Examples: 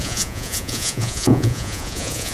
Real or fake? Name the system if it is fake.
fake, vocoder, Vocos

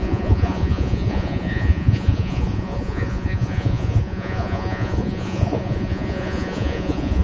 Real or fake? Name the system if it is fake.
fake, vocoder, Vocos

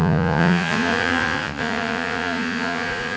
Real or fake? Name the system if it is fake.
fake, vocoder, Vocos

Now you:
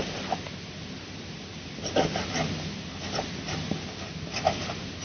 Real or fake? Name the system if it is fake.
real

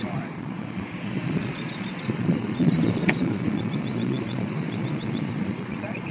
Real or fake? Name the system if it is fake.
fake, vocoder, Vocos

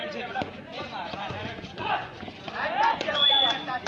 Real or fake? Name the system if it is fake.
fake, vocoder, Vocos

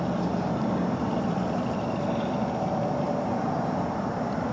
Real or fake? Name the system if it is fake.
real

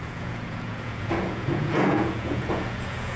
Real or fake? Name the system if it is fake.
fake, vocoder, Vocos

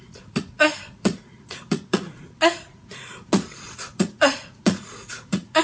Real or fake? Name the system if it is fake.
fake, vocoder, Vocos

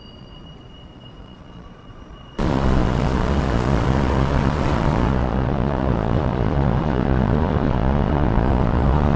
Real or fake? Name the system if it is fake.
fake, vocoder, Vocos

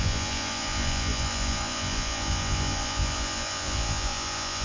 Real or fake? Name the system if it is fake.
fake, vocoder, Vocos